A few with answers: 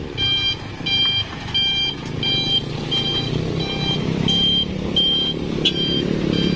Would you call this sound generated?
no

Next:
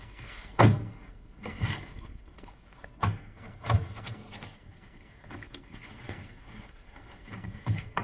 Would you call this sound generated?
yes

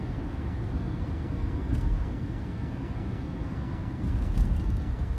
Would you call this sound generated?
yes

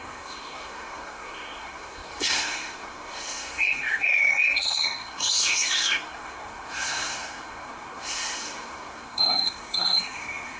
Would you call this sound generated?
yes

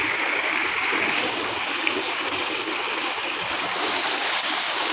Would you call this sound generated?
yes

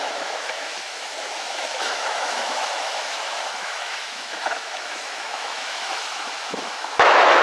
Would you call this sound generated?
yes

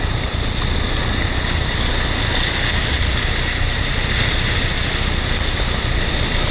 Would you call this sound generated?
no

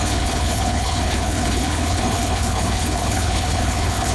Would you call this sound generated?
yes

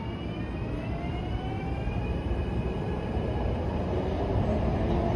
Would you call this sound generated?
no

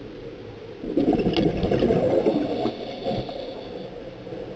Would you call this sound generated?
no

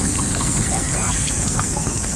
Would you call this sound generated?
yes